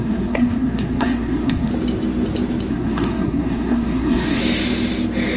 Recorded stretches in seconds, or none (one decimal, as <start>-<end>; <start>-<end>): 1.7-2.7; 4.4-5.4